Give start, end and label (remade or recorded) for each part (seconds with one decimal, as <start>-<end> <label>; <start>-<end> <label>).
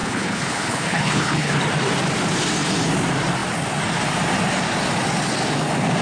0.0-1.6 remade; 1.6-6.0 recorded